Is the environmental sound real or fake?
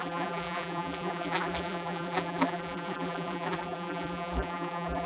fake